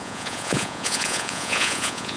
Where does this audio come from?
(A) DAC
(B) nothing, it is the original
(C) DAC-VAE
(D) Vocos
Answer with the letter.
D